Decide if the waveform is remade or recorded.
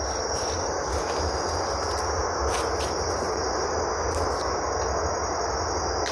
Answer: recorded